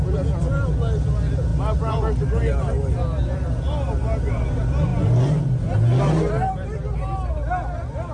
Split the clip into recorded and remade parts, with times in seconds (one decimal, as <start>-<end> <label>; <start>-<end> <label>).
0.0-8.1 recorded